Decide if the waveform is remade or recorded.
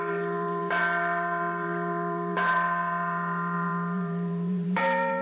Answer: remade